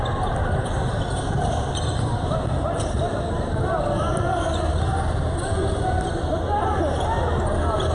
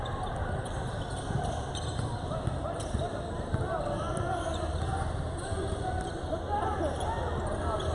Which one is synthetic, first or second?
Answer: second